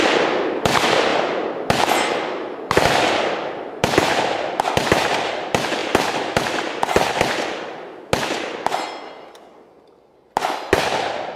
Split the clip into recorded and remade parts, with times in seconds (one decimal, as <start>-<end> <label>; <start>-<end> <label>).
0.0-11.4 recorded